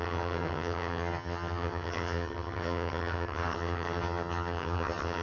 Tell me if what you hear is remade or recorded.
remade